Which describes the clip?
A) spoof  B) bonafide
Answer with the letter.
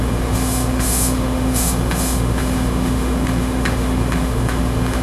A